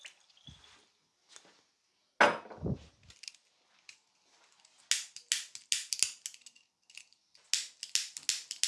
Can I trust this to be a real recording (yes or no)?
yes